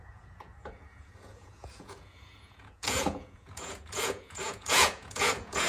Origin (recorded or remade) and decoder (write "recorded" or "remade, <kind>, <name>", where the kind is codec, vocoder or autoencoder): remade, vocoder, Vocos